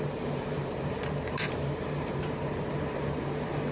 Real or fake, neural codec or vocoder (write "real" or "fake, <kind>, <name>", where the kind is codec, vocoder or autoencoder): fake, vocoder, BigVGAN v2